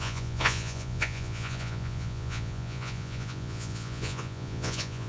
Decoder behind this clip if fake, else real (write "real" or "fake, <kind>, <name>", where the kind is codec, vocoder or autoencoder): fake, vocoder, Vocos